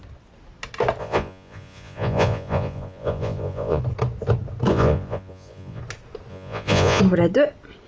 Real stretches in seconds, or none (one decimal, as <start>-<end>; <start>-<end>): 0.0-1.0; 3.8-4.7; 5.8-6.3; 7.0-7.9